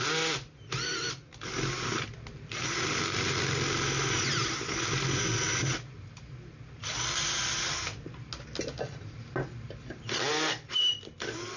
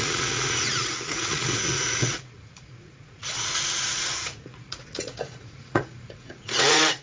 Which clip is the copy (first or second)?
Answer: second